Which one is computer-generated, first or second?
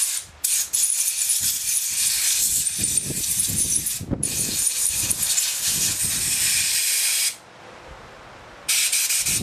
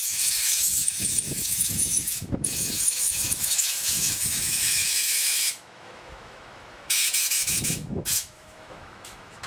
second